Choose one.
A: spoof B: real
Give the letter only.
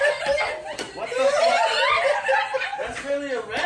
B